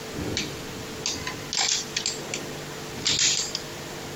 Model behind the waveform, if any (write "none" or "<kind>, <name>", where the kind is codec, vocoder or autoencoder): none